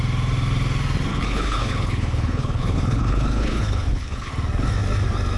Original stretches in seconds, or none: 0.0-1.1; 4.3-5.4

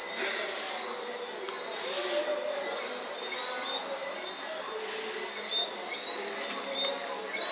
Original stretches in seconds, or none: 0.0-7.5